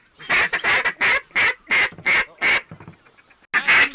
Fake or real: real